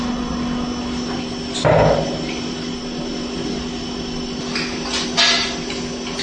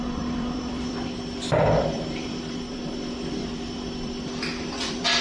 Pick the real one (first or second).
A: first